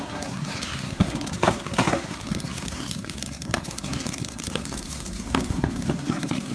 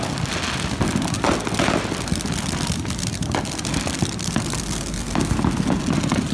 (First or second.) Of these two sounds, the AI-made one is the first